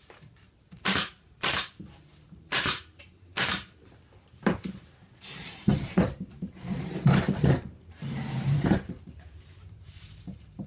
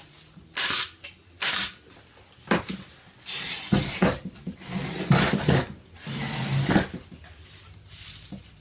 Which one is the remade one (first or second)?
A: first